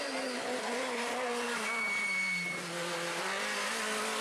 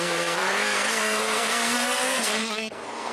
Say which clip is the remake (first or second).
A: second